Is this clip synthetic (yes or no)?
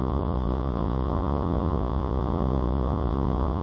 yes